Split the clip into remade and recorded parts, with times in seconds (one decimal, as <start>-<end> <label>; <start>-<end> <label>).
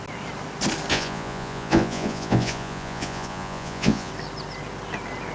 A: 0.0-0.9 recorded; 0.9-4.1 remade; 4.1-5.3 recorded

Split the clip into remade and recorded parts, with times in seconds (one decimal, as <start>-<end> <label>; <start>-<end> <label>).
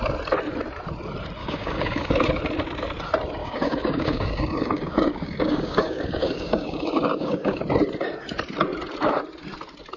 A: 0.0-1.4 recorded; 1.4-2.1 remade; 2.1-3.4 recorded; 3.4-7.6 remade; 7.6-10.0 recorded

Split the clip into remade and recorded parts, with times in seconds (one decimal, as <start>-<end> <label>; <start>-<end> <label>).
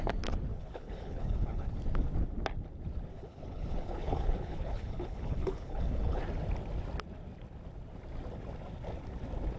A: 0.0-0.5 recorded; 0.5-1.7 remade; 1.7-3.1 recorded; 3.1-6.2 remade; 6.2-9.6 recorded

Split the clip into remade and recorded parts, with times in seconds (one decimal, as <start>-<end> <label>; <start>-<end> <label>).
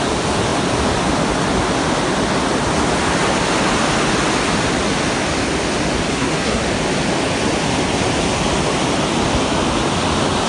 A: 0.0-6.1 recorded; 6.1-6.6 remade; 6.6-10.5 recorded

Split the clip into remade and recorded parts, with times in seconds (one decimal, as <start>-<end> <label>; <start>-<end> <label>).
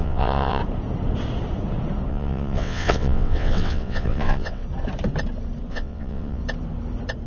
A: 0.0-0.6 remade; 0.6-2.1 recorded; 2.1-4.6 remade; 4.6-5.7 recorded; 5.7-6.4 remade; 6.4-7.3 recorded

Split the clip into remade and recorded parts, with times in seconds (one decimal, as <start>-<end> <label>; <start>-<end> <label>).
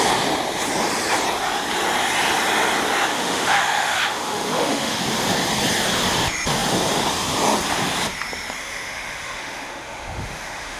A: 0.0-3.1 recorded; 3.1-5.0 remade; 5.0-8.6 recorded; 8.6-10.8 remade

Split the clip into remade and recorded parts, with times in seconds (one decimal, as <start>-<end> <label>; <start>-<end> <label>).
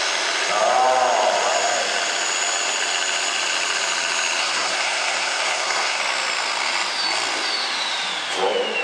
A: 0.0-4.4 recorded; 4.4-6.0 remade; 6.0-8.8 recorded